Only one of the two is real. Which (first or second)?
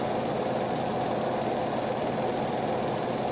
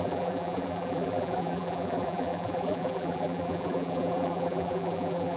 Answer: first